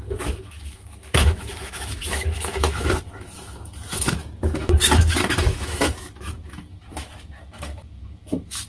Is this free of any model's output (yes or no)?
no